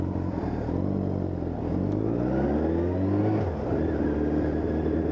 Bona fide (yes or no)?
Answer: yes